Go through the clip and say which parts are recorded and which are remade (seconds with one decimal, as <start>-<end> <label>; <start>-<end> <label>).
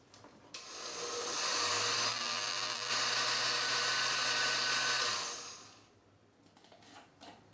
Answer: 0.0-2.1 recorded; 2.1-2.9 remade; 2.9-7.5 recorded